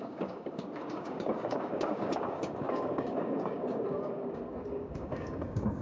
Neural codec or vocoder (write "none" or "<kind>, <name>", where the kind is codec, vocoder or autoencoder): codec, DAC